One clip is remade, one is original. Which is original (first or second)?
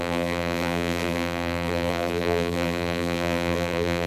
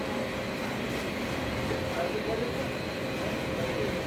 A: second